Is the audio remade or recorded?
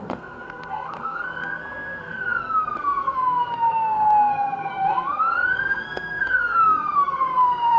remade